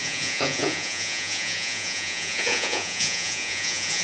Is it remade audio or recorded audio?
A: remade